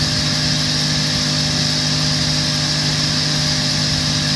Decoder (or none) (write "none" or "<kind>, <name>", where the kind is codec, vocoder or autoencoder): none